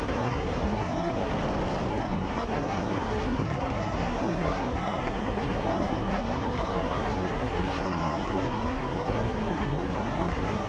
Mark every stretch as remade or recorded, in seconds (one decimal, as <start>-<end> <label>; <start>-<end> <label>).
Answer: 0.0-1.3 remade; 1.3-1.9 recorded; 1.9-10.7 remade